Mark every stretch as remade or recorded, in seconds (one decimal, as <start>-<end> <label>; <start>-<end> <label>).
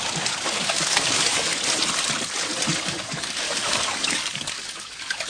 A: 0.0-1.5 remade; 1.5-2.9 recorded; 2.9-5.3 remade